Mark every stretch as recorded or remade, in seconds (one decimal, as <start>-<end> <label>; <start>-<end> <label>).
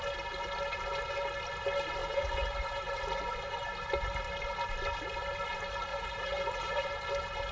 0.0-2.0 recorded; 2.0-3.2 remade; 3.2-5.9 recorded; 5.9-6.9 remade; 6.9-7.5 recorded